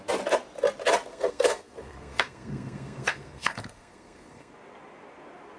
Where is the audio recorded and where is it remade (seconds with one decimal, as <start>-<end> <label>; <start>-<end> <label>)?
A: 0.0-1.1 recorded; 1.1-4.5 remade; 4.5-5.6 recorded

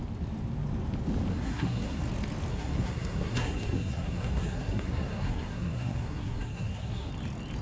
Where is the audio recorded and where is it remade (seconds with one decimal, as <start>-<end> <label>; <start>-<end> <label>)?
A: 0.0-1.3 recorded; 1.3-2.0 remade; 2.0-2.5 recorded; 2.5-7.1 remade; 7.1-7.6 recorded

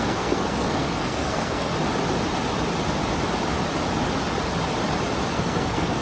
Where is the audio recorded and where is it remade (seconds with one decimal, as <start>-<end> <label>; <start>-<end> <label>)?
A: 0.0-1.7 remade; 1.7-5.3 recorded; 5.3-6.0 remade

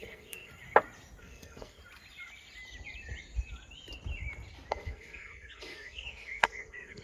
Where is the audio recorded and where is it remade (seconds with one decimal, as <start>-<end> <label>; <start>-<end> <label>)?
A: 0.0-0.5 remade; 0.5-1.2 recorded; 1.2-1.8 remade; 1.8-4.7 recorded; 4.7-7.0 remade

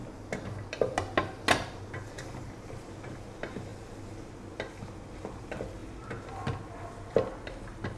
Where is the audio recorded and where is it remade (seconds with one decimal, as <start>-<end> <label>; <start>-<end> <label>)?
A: 0.0-8.0 recorded

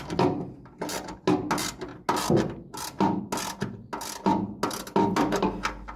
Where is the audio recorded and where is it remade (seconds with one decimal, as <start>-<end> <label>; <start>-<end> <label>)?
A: 0.0-6.0 recorded

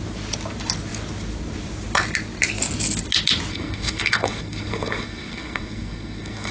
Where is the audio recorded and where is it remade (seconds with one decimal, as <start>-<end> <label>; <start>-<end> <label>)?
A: 0.0-3.5 recorded; 3.5-6.5 remade

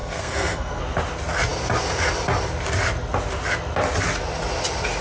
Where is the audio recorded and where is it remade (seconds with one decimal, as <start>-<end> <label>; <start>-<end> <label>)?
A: 0.0-0.8 remade; 0.8-5.0 recorded